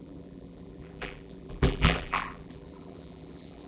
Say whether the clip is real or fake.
fake